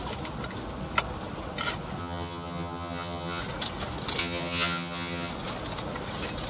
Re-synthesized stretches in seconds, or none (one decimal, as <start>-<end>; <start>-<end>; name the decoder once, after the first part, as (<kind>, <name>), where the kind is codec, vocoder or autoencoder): 2.0-3.4 (vocoder, HiFi-GAN); 4.2-5.3